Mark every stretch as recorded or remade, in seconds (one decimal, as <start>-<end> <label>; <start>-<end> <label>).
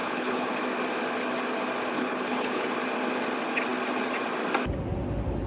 0.0-0.5 remade; 0.5-1.8 recorded; 1.8-2.7 remade; 2.7-5.5 recorded